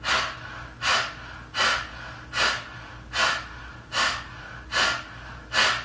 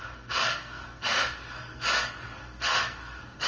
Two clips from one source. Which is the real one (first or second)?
first